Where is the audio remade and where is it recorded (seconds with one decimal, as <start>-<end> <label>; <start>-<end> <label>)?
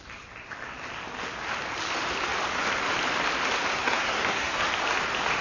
0.0-3.8 recorded; 3.8-4.6 remade; 4.6-5.4 recorded